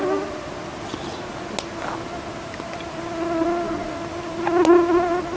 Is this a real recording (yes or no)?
yes